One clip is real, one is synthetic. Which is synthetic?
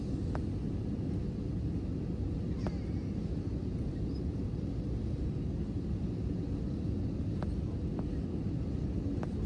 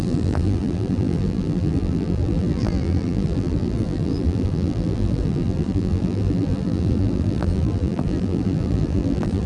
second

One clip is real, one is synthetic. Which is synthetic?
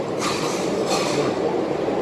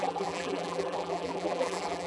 second